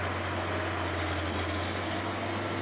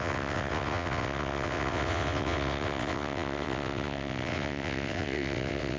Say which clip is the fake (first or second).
second